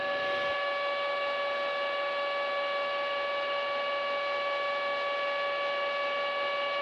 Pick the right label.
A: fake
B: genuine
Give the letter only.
B